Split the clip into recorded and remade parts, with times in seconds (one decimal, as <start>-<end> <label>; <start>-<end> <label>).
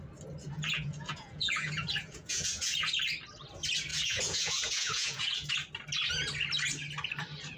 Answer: 0.0-0.4 recorded; 0.4-2.9 remade; 2.9-3.9 recorded; 3.9-5.5 remade; 5.5-7.6 recorded